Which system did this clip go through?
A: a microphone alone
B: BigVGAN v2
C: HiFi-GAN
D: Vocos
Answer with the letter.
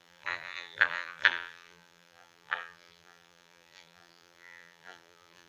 B